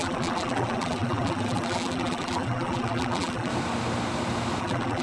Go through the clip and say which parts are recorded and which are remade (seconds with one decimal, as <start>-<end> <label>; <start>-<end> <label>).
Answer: 0.0-3.5 remade; 3.5-4.6 recorded; 4.6-5.0 remade